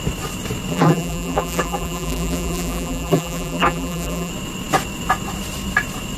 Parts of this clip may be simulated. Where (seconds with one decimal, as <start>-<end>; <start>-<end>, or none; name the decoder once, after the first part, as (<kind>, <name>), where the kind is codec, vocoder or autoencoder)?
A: 0.7-4.3 (vocoder, BigVGAN v2)